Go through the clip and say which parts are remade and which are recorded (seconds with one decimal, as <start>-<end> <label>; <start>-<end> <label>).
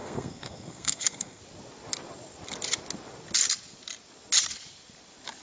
0.0-1.4 remade; 1.4-5.4 recorded